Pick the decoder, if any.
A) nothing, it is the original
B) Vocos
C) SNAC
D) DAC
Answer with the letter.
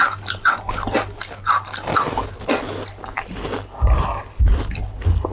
A